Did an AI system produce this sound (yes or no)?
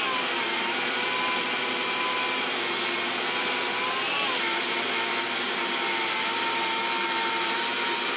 no